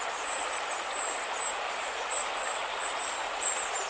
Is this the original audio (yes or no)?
yes